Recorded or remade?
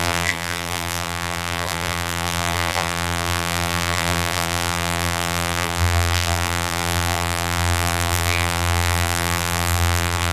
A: remade